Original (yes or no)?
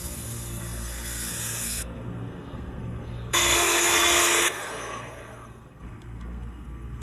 no